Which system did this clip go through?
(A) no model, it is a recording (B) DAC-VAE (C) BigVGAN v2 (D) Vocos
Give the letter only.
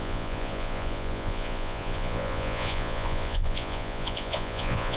D